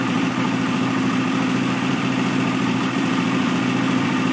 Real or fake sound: fake